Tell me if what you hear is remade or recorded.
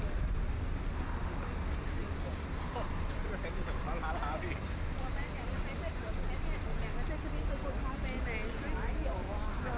recorded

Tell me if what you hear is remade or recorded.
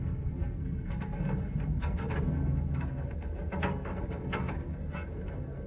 remade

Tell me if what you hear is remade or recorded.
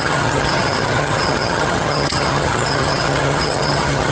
remade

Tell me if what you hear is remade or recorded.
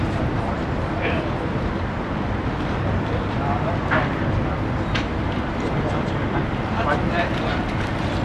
remade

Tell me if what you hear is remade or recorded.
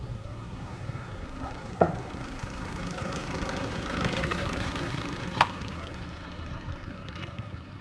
remade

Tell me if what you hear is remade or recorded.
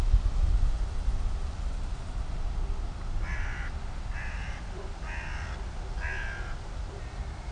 recorded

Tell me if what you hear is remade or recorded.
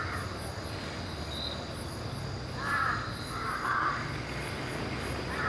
recorded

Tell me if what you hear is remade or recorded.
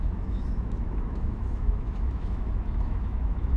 remade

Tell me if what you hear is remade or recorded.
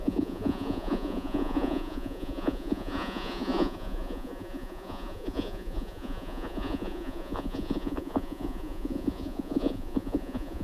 remade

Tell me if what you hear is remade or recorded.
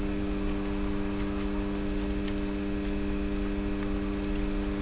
recorded